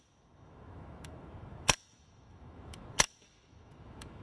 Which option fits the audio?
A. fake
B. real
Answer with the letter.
A